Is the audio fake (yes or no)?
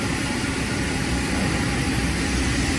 yes